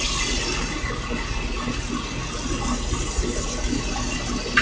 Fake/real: real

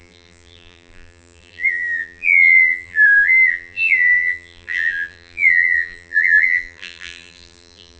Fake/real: fake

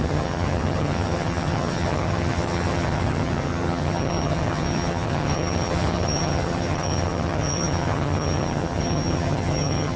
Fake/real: fake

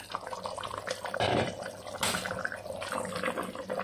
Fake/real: real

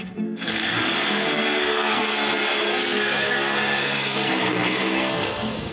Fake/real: fake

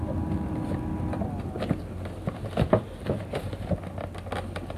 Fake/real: real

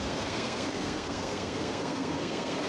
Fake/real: fake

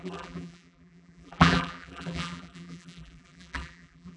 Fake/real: fake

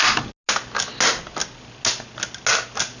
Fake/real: real